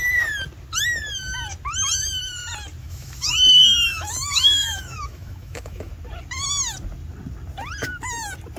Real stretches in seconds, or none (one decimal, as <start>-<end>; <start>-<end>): 0.0-2.8; 5.9-8.6